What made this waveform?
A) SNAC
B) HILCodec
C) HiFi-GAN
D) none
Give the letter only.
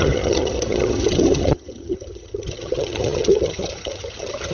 C